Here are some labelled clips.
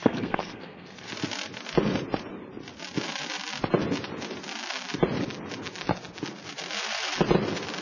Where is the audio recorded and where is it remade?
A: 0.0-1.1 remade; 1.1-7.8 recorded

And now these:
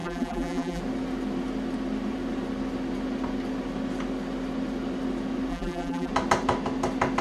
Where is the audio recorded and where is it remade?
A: 0.0-0.8 remade; 0.8-5.5 recorded; 5.5-6.1 remade; 6.1-7.2 recorded

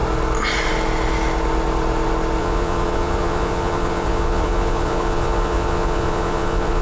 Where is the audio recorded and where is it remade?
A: 0.0-2.4 recorded; 2.4-6.8 remade

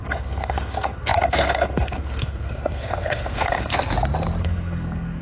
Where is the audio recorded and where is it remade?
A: 0.0-3.7 remade; 3.7-4.4 recorded; 4.4-5.2 remade

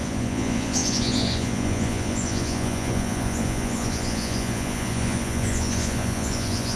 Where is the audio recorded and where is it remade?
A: 0.0-6.8 remade